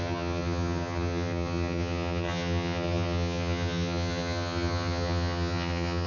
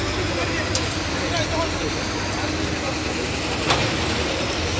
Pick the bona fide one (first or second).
second